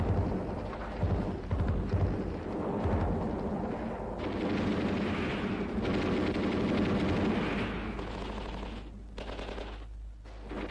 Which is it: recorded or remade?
recorded